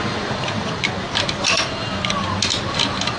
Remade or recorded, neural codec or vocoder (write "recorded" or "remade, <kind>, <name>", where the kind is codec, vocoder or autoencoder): recorded